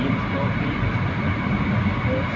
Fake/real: real